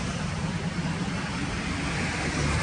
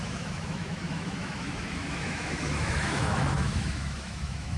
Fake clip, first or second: second